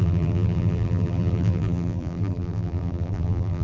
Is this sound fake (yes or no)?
yes